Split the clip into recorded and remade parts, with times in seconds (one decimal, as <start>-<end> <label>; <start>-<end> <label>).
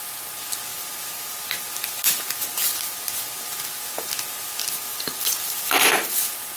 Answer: 0.0-0.7 recorded; 0.7-1.7 remade; 1.7-2.5 recorded; 2.5-3.1 remade; 3.1-4.9 recorded; 4.9-6.6 remade